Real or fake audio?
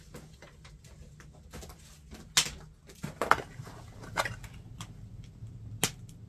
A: real